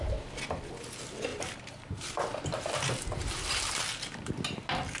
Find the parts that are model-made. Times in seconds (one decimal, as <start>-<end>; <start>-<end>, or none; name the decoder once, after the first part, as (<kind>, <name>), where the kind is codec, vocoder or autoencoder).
1.3-4.3 (vocoder, BigVGAN v2)